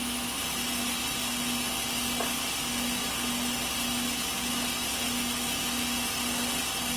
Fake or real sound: real